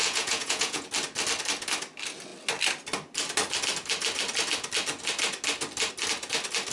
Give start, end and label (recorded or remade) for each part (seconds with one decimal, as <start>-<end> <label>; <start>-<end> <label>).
0.0-0.9 remade; 0.9-6.7 recorded